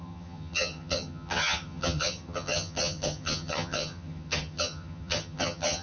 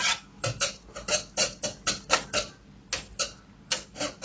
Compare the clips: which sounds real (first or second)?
second